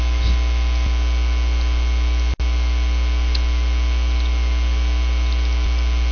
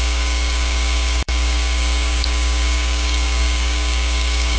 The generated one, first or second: second